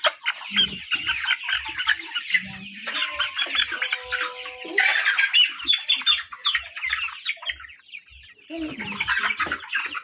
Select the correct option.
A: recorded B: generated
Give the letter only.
A